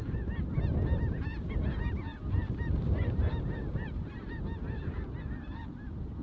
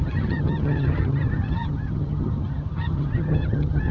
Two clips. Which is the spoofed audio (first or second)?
second